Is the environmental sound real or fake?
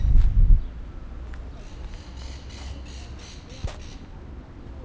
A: real